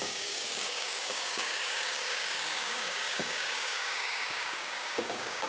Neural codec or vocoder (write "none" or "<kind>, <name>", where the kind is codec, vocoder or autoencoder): codec, DAC